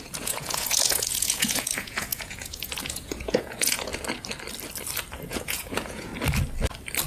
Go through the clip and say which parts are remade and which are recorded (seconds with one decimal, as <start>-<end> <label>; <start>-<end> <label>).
0.0-3.9 remade; 3.9-5.3 recorded; 5.3-6.1 remade; 6.1-7.1 recorded